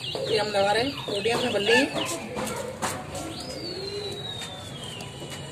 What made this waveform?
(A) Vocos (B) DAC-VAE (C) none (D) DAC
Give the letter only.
C